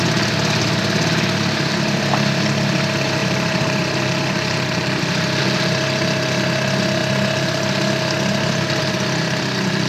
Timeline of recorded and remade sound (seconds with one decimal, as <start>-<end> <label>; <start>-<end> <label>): 0.0-3.2 recorded; 3.2-5.0 remade; 5.0-9.9 recorded